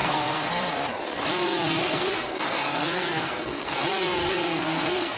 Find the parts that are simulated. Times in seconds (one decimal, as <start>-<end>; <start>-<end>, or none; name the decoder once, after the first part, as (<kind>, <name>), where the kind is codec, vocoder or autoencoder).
0.0-0.5 (codec, SNAC); 1.8-3.8; 4.2-5.2